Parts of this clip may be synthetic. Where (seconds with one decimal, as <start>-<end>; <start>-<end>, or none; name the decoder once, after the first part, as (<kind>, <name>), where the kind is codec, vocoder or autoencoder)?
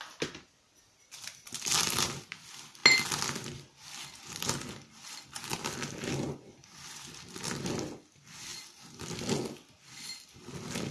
none